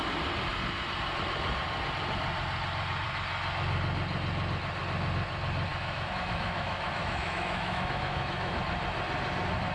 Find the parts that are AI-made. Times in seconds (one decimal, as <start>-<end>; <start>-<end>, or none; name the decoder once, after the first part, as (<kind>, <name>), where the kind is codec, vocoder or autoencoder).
5.7-8.6 (autoencoder, DAC-VAE)